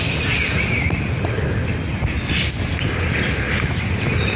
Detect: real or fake real